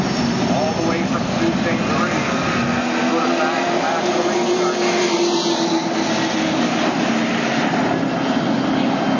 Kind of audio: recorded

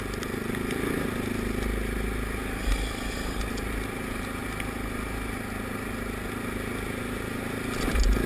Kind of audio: recorded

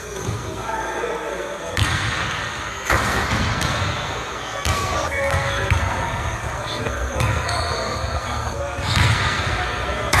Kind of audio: remade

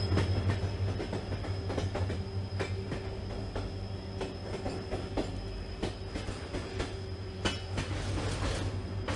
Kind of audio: recorded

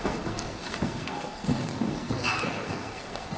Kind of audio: remade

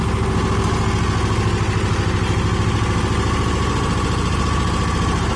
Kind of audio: recorded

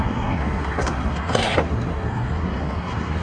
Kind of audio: remade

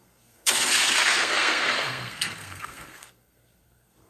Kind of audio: remade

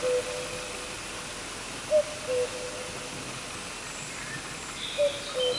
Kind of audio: recorded